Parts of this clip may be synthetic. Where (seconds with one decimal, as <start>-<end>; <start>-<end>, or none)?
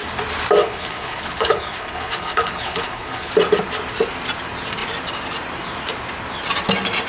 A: 0.6-3.3